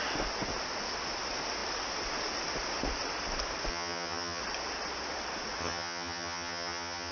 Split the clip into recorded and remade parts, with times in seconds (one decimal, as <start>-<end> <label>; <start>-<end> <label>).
0.0-3.7 recorded; 3.7-4.4 remade; 4.4-5.6 recorded; 5.6-7.1 remade